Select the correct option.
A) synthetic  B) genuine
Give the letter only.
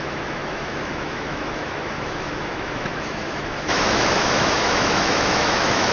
A